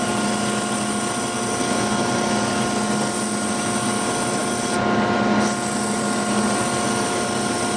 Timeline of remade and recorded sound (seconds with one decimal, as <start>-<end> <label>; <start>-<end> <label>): 0.0-7.8 recorded